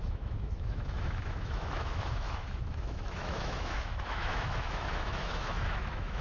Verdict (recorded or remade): remade